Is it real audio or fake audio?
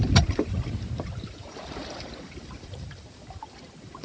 fake